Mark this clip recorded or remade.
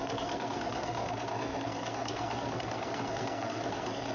remade